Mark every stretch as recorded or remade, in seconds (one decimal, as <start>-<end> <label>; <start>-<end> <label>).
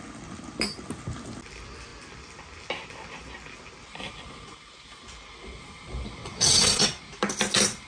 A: 0.0-6.2 recorded; 6.2-7.0 remade; 7.0-7.9 recorded